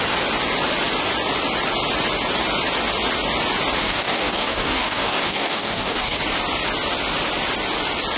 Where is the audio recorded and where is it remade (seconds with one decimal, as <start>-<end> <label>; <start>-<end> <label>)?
0.0-3.8 recorded; 3.8-6.2 remade; 6.2-8.2 recorded

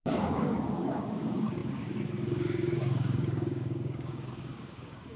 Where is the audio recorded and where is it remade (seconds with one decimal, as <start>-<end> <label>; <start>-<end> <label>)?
0.0-5.2 remade

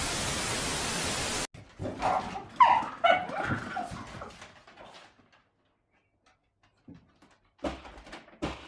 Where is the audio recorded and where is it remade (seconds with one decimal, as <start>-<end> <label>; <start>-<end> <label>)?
0.0-8.7 recorded